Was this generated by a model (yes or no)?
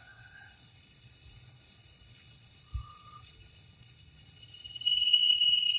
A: yes